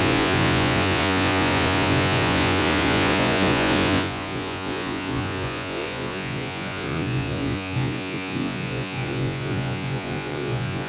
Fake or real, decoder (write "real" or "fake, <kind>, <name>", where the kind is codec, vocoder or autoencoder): fake, vocoder, Vocos